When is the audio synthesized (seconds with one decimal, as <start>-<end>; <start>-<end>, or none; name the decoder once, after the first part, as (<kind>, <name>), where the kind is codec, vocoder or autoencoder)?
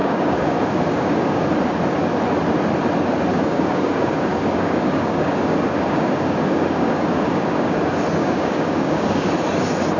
0.0-1.5 (codec, DAC); 3.3-7.8; 8.2-9.3